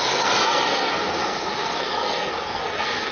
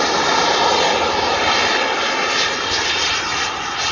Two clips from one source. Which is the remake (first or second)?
first